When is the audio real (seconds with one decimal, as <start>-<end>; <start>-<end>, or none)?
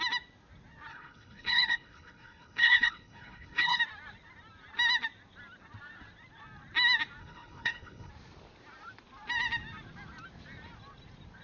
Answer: 0.0-0.9; 3.8-7.2; 8.1-11.4